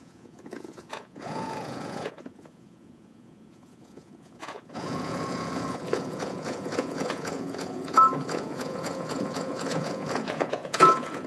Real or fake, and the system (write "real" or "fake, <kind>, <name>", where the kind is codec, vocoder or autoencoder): fake, vocoder, Vocos